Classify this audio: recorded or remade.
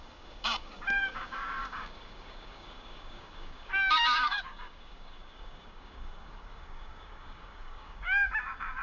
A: remade